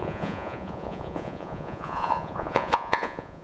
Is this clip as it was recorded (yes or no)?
no